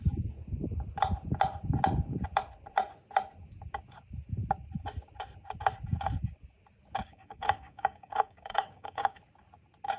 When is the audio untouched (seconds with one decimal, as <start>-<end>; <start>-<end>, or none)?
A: 0.0-7.0; 9.2-10.0